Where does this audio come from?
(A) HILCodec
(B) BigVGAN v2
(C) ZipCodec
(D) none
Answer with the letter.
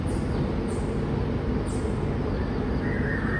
D